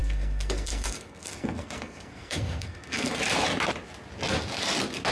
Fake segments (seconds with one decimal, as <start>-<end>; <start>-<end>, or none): 0.0-3.1

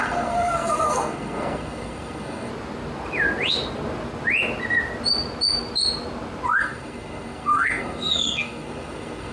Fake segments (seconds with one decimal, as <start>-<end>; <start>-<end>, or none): 0.0-2.5; 6.6-9.3

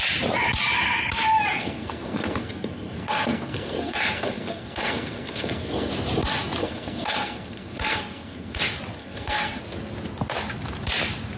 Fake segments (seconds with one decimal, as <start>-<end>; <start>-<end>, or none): 1.5-5.9; 6.6-8.6; 9.0-9.6

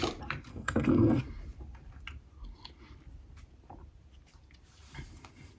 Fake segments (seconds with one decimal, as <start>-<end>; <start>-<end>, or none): 0.5-1.2

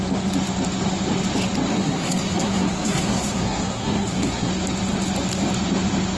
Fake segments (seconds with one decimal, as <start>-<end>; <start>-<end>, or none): 1.7-4.5